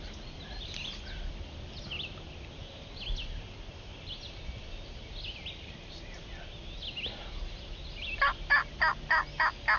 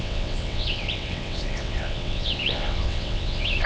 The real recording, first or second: first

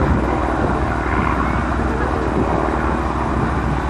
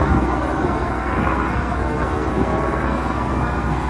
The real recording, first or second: first